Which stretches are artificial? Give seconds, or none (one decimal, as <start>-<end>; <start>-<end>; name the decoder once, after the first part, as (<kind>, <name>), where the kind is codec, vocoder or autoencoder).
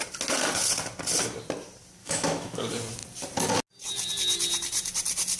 2.0-2.6 (autoencoder, DAC-VAE)